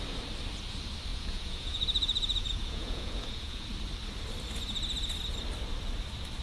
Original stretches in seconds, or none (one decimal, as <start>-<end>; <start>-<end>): 0.0-1.1; 3.7-6.4